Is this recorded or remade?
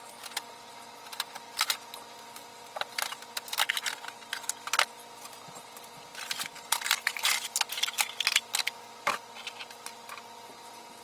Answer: recorded